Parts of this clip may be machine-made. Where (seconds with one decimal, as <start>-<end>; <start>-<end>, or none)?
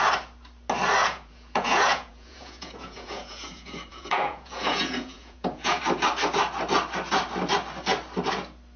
1.0-5.8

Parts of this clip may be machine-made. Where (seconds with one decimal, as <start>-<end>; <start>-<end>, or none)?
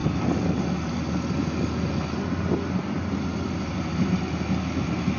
none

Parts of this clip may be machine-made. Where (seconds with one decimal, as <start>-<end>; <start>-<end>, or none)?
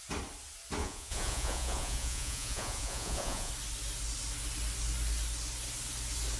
0.8-3.5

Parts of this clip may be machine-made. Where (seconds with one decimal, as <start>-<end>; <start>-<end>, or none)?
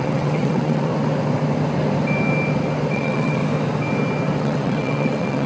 0.0-0.9; 2.9-3.4; 4.4-5.5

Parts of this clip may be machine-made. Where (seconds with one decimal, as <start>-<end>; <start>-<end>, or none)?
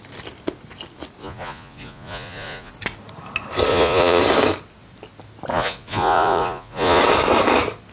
1.2-2.7; 3.7-4.2; 5.5-7.0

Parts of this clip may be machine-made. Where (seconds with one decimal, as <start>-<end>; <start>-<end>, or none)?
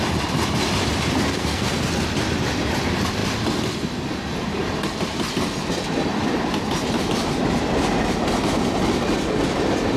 1.3-1.9